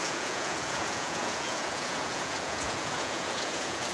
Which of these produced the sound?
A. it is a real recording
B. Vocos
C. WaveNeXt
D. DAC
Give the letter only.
B